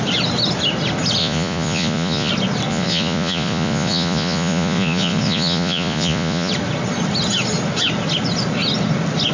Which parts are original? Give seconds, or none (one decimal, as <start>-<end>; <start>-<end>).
0.0-1.2; 2.3-2.7; 6.5-9.3